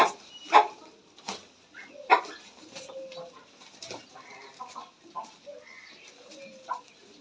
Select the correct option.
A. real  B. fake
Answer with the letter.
A